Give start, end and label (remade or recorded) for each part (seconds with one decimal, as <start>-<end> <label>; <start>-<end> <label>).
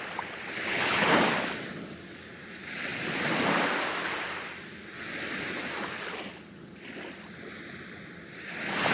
0.0-0.7 recorded; 0.7-1.2 remade; 1.2-8.9 recorded